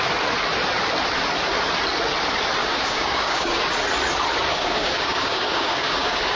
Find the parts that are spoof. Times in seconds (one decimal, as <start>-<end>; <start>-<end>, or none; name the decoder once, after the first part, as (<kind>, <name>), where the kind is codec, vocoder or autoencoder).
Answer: 2.6-3.6 (codec, DAC); 4.5-6.4